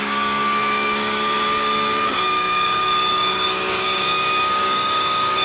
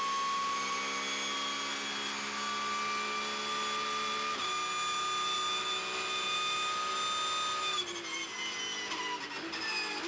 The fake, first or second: first